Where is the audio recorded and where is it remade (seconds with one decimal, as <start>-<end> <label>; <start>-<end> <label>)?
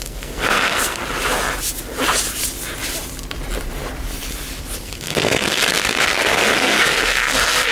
0.0-1.0 remade; 1.0-4.8 recorded; 4.8-7.7 remade